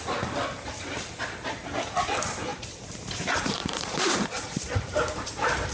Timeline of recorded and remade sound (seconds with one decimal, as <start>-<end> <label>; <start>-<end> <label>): 0.0-2.5 recorded; 2.5-5.7 remade